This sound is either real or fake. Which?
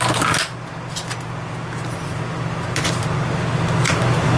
real